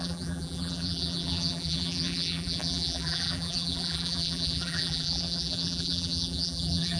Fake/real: fake